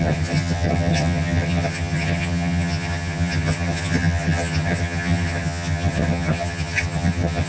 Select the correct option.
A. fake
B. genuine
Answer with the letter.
A